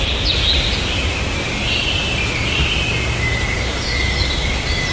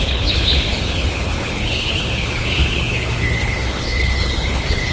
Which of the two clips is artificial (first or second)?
second